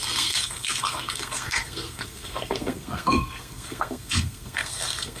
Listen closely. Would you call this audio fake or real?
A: fake